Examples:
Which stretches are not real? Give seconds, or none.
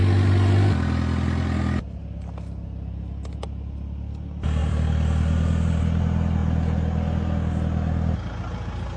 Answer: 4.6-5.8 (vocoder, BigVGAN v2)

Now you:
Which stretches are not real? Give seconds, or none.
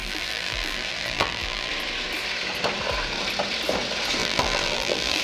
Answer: 0.0-1.7 (vocoder, BigVGAN v2); 4.2-5.2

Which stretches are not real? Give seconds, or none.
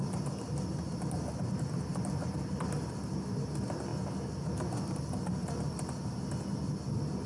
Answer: none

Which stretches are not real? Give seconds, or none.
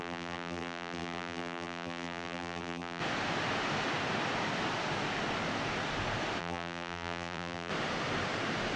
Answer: 0.0-3.0 (vocoder, BigVGAN v2); 6.4-7.7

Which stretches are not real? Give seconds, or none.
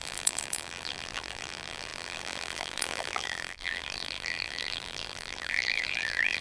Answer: 0.0-6.4 (vocoder, BigVGAN v2)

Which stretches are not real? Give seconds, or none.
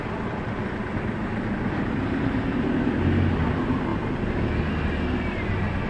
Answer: none